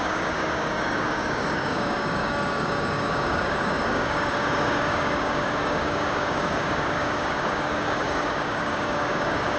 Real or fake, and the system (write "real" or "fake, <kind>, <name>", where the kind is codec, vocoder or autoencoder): fake, codec, DAC